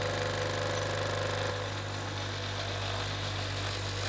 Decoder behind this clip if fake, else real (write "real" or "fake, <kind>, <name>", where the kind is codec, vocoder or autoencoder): real